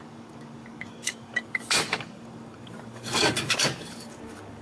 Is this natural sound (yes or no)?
no